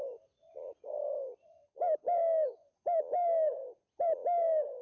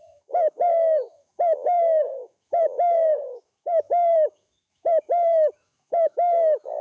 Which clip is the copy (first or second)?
second